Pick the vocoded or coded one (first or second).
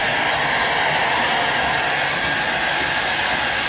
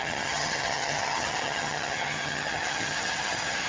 second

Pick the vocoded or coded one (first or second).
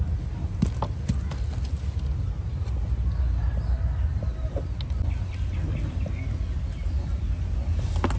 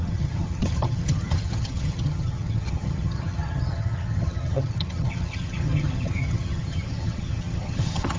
second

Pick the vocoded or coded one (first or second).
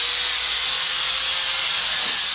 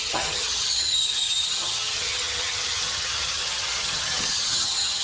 second